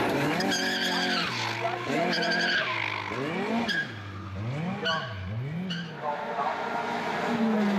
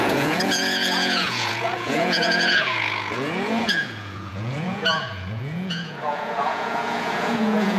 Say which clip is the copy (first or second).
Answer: second